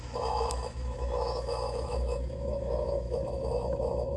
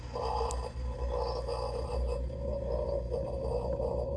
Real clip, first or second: second